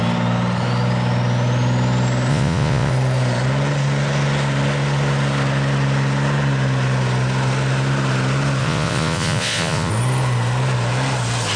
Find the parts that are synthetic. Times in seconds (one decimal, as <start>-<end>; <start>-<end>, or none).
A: 2.3-2.9; 8.6-9.9